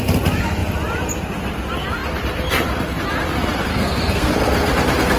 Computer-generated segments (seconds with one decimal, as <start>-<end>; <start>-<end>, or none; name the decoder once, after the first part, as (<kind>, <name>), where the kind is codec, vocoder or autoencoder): 3.7-4.3 (codec, SNAC)